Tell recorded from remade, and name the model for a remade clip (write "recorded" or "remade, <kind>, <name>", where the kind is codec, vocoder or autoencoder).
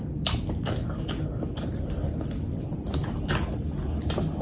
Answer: recorded